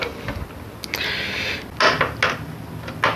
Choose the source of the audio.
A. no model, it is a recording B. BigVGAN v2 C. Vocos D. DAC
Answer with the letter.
A